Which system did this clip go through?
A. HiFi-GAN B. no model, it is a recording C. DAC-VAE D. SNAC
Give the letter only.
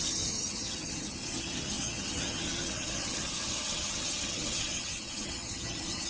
A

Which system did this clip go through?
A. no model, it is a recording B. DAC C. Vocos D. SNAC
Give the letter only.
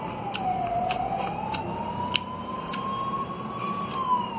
A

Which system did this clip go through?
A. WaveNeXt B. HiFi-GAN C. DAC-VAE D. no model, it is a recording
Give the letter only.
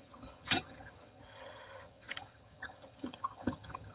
B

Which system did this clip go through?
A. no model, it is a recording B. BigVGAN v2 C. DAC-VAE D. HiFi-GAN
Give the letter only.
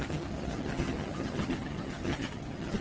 D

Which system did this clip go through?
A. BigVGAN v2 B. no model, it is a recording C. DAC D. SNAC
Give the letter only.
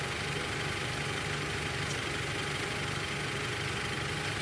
B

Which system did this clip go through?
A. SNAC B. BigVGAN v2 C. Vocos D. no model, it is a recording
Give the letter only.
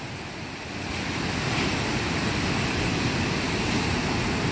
D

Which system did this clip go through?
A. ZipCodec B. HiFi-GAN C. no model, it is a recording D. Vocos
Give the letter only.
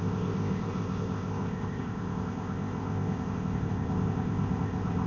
A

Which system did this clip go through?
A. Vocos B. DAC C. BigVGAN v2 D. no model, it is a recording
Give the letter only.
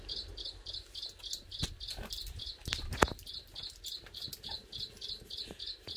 D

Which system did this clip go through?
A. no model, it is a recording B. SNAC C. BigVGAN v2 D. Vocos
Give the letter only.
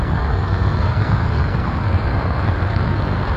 B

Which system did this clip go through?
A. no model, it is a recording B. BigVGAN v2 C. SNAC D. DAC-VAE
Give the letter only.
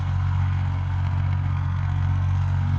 C